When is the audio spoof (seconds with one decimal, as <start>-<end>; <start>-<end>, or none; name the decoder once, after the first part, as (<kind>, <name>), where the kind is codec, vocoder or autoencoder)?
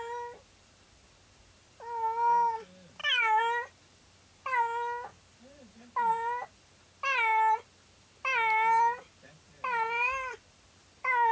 none